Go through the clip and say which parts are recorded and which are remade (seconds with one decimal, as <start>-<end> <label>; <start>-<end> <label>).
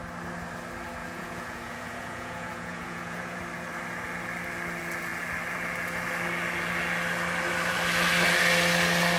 0.0-1.0 recorded; 1.0-3.4 remade; 3.4-9.2 recorded